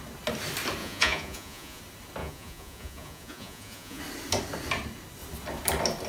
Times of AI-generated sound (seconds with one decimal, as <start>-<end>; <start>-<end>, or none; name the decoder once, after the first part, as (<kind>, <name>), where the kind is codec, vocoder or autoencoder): 0.8-1.8 (vocoder, Vocos); 2.2-4.0